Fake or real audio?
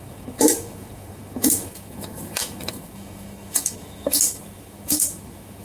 fake